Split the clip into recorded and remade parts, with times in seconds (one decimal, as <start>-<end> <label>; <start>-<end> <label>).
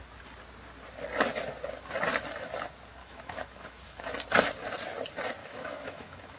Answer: 0.0-3.0 recorded; 3.0-4.0 remade; 4.0-5.4 recorded; 5.4-6.4 remade